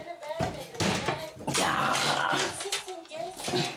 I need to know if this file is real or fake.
real